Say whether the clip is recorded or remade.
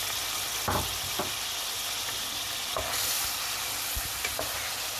recorded